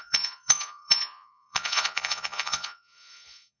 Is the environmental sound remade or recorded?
remade